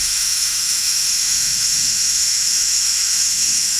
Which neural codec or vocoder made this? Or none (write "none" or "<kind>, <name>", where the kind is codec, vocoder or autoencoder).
autoencoder, DAC-VAE